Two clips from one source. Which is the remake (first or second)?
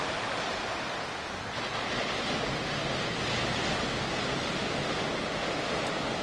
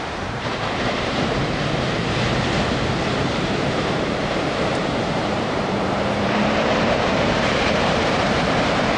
second